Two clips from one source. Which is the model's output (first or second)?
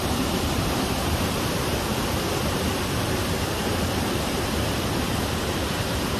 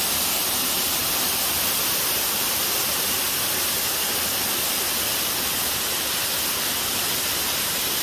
first